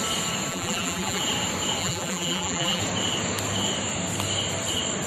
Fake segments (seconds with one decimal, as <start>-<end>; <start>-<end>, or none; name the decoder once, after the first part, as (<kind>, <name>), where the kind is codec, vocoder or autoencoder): 0.5-1.2 (vocoder, BigVGAN v2); 1.8-2.8